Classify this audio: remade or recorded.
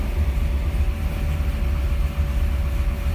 recorded